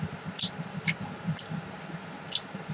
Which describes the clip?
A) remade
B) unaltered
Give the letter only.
B